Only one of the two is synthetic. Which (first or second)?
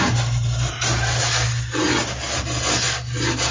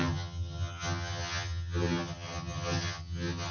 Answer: second